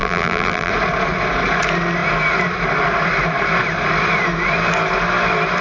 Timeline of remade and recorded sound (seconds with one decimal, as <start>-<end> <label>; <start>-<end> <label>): 0.0-0.7 remade; 0.7-5.6 recorded